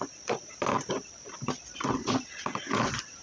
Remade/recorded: recorded